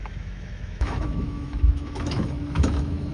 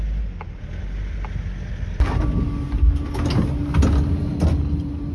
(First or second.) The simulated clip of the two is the first